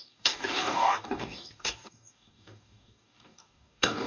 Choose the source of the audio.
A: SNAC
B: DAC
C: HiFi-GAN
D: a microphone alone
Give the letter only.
B